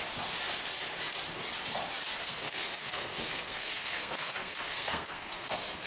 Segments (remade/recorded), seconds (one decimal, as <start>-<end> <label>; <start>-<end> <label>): 0.0-2.2 recorded; 2.2-5.9 remade